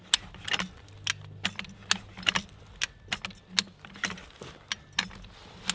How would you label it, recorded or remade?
recorded